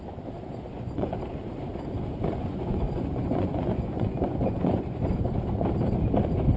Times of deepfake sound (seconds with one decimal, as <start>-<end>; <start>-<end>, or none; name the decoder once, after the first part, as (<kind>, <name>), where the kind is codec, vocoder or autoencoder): 0.7-1.2 (vocoder, Vocos); 2.4-5.0

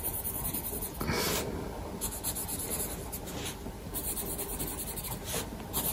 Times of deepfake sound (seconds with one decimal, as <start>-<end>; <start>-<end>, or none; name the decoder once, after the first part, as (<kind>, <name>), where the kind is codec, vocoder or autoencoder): none

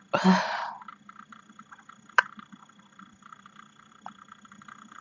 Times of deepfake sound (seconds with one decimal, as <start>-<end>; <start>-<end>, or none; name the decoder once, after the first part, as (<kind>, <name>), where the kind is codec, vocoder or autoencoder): 0.9-3.9 (vocoder, BigVGAN v2)

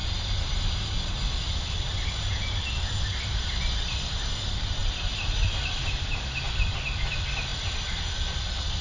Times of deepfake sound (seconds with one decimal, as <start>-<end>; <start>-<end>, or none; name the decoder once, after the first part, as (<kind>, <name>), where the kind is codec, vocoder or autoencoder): none

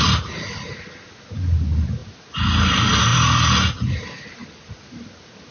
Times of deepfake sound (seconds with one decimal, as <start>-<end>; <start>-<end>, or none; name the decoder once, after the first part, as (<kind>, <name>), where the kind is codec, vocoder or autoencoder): 2.0-2.7 (vocoder, BigVGAN v2); 3.1-4.7

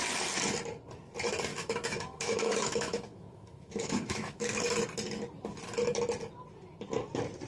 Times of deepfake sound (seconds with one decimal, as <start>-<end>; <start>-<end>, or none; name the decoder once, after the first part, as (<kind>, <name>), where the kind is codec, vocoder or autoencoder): 1.5-4.6 (autoencoder, DAC-VAE)